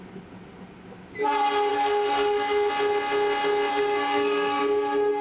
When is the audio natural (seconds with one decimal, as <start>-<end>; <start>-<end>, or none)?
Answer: 0.0-1.7; 2.7-3.7; 4.6-5.2